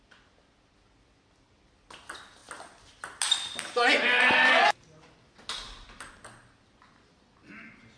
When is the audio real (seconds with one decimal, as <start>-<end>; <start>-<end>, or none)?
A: 0.0-8.0